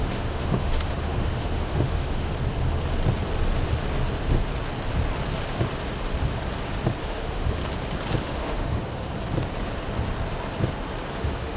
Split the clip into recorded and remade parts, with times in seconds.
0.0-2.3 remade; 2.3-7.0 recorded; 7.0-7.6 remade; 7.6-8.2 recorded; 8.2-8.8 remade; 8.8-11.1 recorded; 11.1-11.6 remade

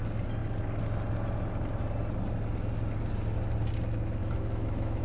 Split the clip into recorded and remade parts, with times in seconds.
0.0-4.2 recorded; 4.2-5.0 remade

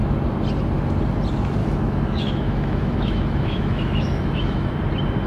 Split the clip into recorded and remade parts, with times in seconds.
0.0-1.6 recorded; 1.6-4.7 remade; 4.7-5.3 recorded

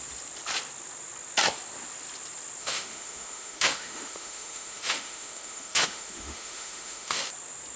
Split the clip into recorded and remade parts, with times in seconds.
0.0-2.6 recorded; 2.6-7.3 remade; 7.3-7.8 recorded

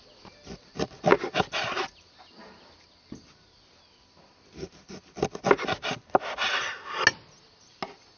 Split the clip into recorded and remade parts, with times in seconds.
0.0-8.2 recorded

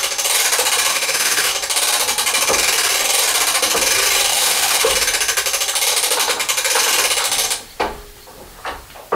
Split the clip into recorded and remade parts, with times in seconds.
0.0-0.9 recorded; 0.9-1.5 remade; 1.5-4.3 recorded; 4.3-4.9 remade; 4.9-9.2 recorded